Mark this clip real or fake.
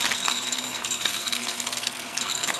fake